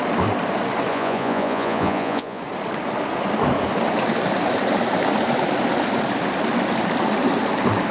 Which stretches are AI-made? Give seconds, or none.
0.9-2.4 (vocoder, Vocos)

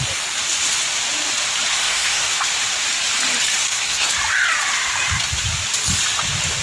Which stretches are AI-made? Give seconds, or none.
1.7-2.3 (codec, SNAC); 3.6-4.1

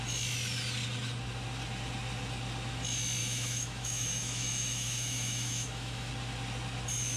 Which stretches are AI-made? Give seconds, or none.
3.2-6.1 (autoencoder, DAC-VAE)